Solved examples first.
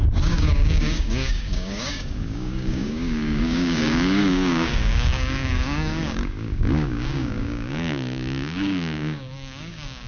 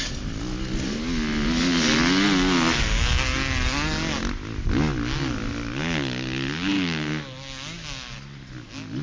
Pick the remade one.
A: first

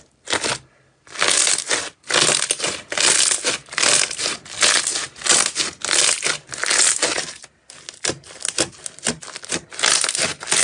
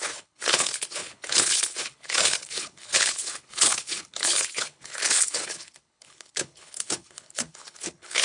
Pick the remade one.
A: second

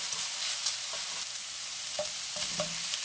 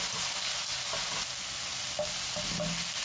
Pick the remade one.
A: first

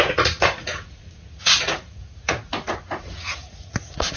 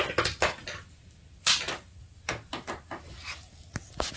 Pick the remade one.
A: first